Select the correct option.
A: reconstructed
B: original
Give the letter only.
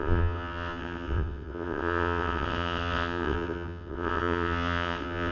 A